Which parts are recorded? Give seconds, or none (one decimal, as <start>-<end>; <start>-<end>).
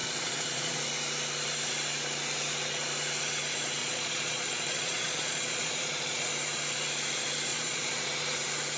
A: 0.8-3.8; 6.3-7.5; 8.1-8.8